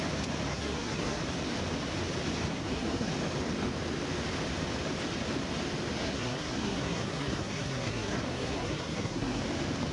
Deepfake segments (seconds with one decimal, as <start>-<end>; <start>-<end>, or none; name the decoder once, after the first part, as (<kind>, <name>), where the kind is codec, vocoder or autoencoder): 0.5-1.2 (codec, SNAC); 2.5-3.1; 6.0-9.4